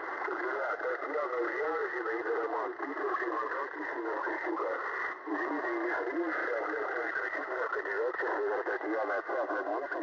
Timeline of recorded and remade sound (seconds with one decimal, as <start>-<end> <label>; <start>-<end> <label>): 0.0-6.4 recorded; 6.4-7.0 remade; 7.0-10.0 recorded